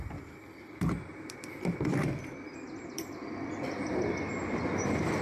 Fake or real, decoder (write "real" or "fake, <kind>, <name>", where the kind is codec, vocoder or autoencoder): fake, vocoder, BigVGAN v2